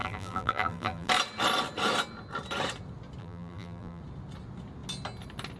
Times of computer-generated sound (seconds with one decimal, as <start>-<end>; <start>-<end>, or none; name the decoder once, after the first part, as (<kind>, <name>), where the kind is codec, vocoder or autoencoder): 0.0-1.1 (vocoder, BigVGAN v2); 3.2-4.0